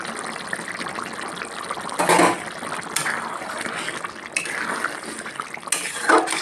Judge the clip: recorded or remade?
recorded